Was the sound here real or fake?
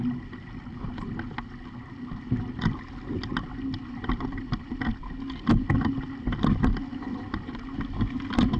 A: real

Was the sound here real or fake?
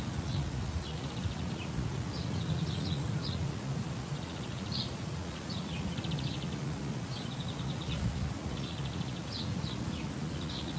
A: fake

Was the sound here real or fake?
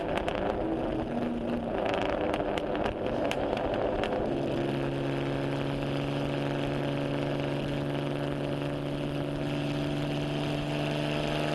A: real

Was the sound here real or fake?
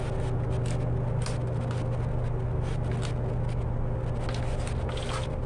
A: real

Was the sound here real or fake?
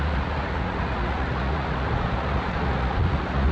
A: fake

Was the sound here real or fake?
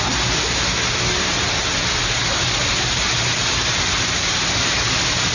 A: real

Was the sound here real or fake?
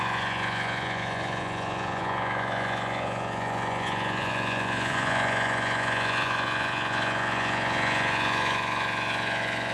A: fake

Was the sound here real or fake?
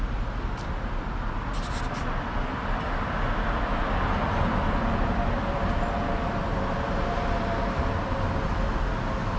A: real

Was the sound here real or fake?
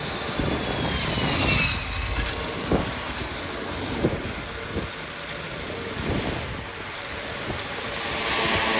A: real